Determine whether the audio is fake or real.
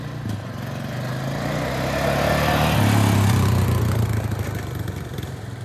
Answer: real